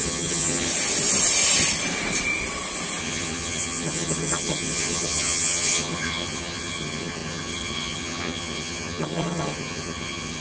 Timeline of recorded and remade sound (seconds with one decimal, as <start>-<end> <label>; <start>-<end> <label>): 0.0-0.7 remade; 0.7-3.0 recorded; 3.0-10.4 remade